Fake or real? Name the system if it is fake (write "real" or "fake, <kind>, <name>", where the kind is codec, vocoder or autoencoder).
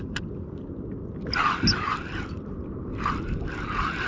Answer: real